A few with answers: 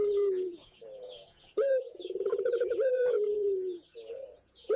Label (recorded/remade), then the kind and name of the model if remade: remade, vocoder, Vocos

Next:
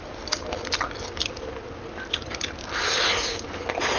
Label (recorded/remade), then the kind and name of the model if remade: recorded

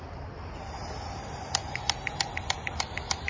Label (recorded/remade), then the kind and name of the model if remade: recorded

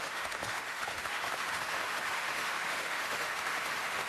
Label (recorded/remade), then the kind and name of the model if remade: remade, autoencoder, DAC-VAE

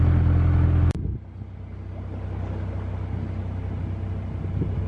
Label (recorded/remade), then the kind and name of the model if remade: recorded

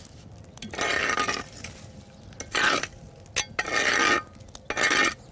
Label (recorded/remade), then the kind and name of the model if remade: recorded